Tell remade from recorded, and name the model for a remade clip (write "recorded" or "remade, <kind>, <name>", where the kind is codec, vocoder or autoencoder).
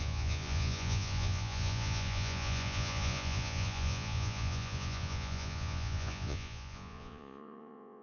remade, vocoder, Vocos